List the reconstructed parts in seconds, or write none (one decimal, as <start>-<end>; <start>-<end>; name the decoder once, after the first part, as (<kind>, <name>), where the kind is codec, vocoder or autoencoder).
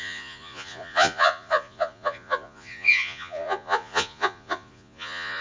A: 0.0-5.4 (vocoder, Vocos)